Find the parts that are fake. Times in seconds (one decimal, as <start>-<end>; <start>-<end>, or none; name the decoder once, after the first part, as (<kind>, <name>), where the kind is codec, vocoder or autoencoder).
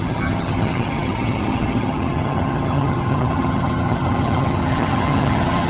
0.0-5.7 (vocoder, HiFi-GAN)